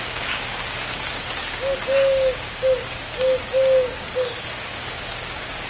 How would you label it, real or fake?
fake